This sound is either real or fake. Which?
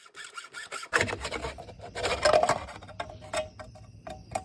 real